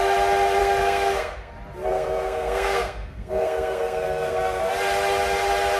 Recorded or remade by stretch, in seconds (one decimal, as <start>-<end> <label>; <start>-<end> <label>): 0.0-0.6 recorded; 0.6-1.5 remade; 1.5-1.9 recorded; 1.9-4.7 remade; 4.7-5.8 recorded